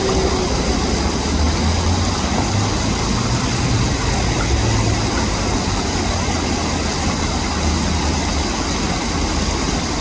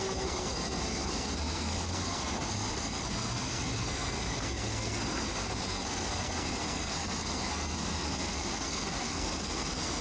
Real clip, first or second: first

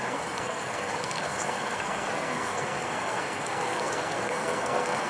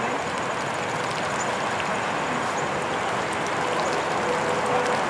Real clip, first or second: second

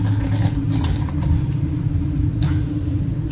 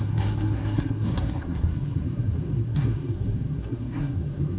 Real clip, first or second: first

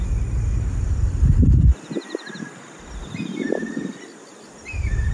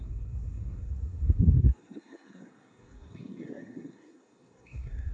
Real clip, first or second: first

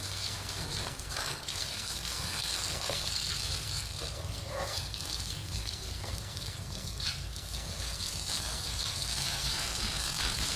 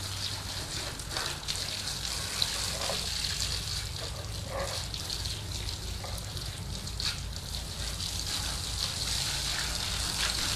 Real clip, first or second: second